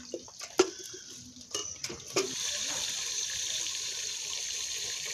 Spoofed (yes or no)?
yes